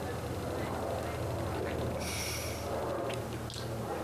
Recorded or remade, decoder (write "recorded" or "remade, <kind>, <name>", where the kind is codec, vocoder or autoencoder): recorded